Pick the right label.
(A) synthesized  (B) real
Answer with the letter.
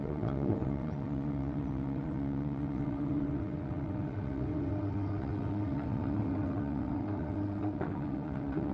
A